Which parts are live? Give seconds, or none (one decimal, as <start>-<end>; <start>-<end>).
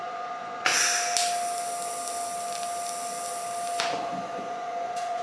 0.7-3.8